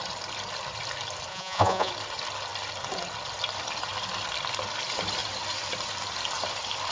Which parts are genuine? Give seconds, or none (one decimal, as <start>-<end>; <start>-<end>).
0.0-1.3; 1.9-6.9